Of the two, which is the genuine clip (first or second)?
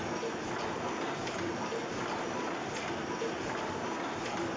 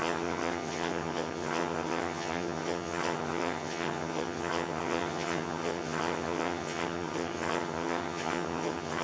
first